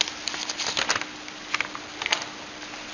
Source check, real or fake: real